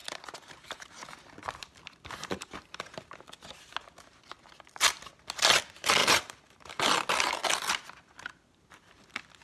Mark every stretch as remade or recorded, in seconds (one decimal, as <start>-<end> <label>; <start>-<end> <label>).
0.0-0.9 remade; 0.9-6.0 recorded; 6.0-6.8 remade; 6.8-9.4 recorded